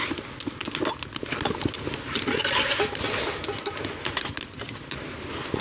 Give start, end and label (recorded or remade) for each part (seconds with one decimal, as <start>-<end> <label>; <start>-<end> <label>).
0.0-5.6 recorded